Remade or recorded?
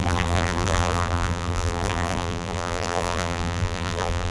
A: remade